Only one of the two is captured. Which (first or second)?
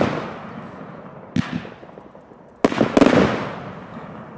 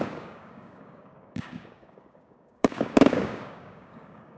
first